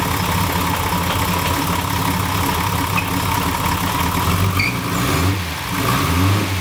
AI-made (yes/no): no